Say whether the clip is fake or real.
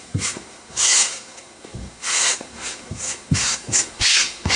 fake